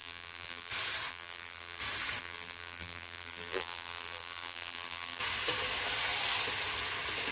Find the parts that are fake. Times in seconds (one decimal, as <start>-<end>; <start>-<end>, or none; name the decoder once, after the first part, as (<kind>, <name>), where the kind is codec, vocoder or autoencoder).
0.0-0.7 (vocoder, BigVGAN v2); 1.1-1.8; 2.2-5.2